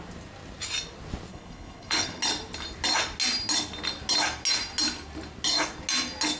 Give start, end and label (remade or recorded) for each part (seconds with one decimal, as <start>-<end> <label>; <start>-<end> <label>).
0.0-1.3 recorded; 1.3-2.2 remade; 2.2-6.4 recorded